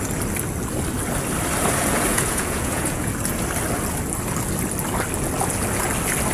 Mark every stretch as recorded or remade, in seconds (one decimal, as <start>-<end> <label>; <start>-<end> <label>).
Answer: 0.0-2.1 recorded; 2.1-3.1 remade; 3.1-6.3 recorded